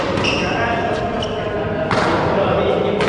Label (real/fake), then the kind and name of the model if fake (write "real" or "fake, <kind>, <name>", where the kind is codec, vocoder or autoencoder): real